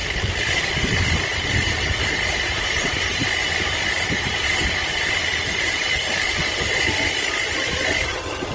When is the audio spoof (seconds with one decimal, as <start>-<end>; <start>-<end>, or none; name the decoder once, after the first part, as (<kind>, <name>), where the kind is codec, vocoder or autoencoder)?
0.0-0.7 (vocoder, BigVGAN v2); 1.3-2.9; 3.4-6.1